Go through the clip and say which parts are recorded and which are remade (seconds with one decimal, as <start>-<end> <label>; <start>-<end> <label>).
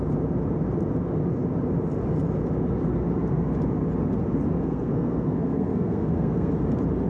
0.0-4.6 recorded; 4.6-6.5 remade; 6.5-7.1 recorded